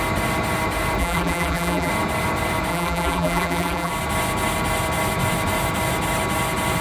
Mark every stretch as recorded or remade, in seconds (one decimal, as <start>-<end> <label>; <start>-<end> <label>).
0.0-1.0 recorded; 1.0-1.9 remade; 1.9-2.7 recorded; 2.7-3.9 remade; 3.9-6.8 recorded